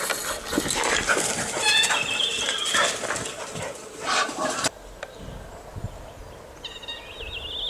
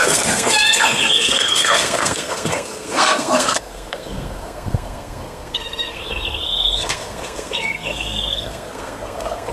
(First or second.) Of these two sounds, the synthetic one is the second